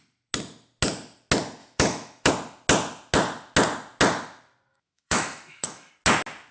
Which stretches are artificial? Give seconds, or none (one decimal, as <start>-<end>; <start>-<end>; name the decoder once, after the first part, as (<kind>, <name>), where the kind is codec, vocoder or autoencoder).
1.6-2.3 (autoencoder, DAC-VAE); 4.7-5.9